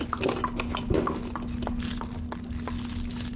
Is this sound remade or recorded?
recorded